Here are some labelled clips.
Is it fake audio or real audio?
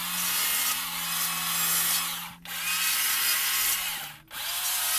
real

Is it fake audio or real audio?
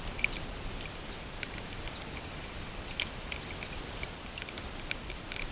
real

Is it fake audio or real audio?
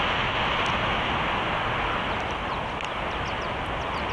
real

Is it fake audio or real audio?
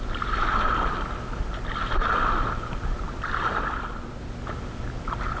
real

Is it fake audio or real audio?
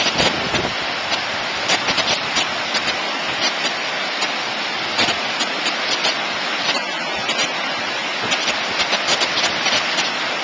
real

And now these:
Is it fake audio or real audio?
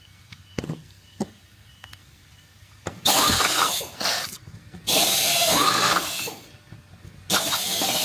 fake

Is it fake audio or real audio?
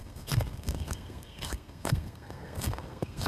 fake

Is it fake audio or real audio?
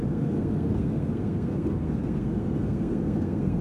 fake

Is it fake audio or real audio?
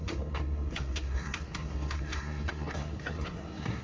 fake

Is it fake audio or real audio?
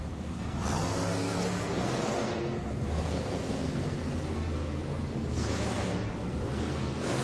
fake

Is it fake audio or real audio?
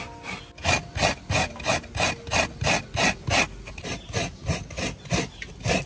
real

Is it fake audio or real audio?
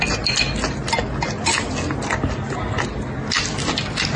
real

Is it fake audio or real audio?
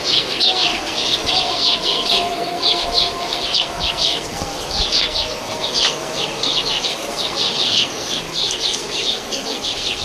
fake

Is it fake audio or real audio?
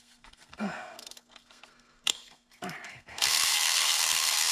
fake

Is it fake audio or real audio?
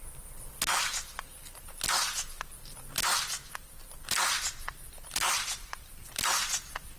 real